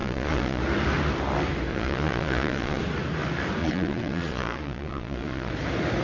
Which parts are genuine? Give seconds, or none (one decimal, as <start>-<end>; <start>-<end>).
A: 0.6-1.7; 2.8-3.6; 5.5-6.0